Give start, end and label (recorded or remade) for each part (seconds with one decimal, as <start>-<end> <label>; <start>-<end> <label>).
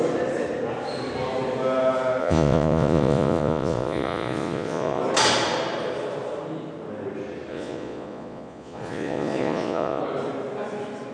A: 0.0-2.2 recorded; 2.2-5.0 remade; 5.0-7.5 recorded; 7.5-10.0 remade; 10.0-11.1 recorded